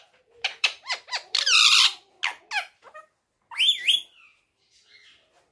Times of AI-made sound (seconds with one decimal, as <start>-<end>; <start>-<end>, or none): 0.0-1.9